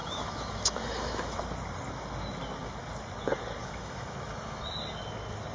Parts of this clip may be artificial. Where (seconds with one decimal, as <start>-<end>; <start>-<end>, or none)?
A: 0.0-1.4; 3.6-4.6